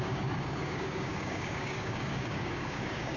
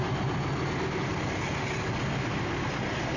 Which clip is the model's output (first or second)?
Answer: first